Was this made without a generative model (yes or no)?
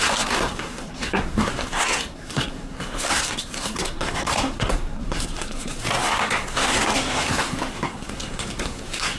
no